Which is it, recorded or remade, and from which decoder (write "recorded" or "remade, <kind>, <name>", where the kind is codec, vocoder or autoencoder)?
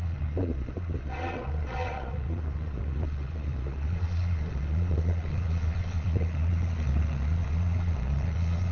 remade, vocoder, Vocos